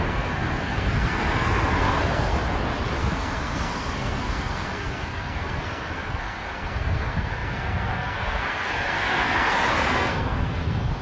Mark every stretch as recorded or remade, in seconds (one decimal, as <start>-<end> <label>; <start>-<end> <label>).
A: 0.0-2.4 remade; 2.4-3.0 recorded; 3.0-11.0 remade